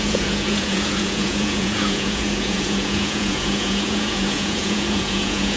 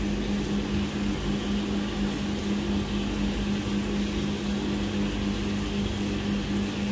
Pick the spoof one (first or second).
first